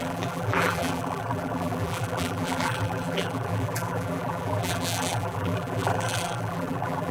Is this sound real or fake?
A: fake